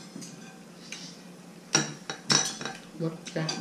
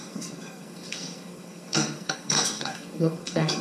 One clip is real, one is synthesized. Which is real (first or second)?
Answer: first